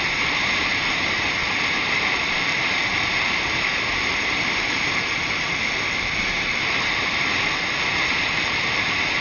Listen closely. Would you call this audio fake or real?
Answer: fake